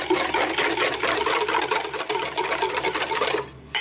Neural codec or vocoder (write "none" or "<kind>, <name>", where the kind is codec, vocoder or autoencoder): none